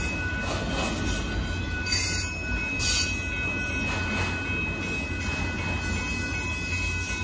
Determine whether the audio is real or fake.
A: real